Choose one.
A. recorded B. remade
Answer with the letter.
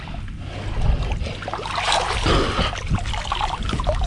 A